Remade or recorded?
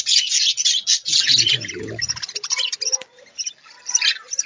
recorded